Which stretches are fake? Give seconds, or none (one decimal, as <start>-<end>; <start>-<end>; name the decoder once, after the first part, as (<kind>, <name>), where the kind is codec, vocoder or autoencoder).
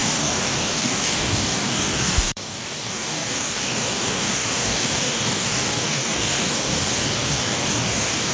0.0-8.3 (codec, DAC)